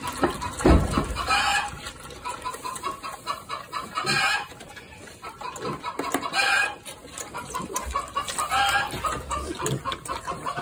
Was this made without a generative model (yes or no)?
yes